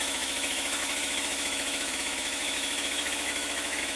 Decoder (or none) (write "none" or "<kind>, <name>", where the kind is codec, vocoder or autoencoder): autoencoder, DAC-VAE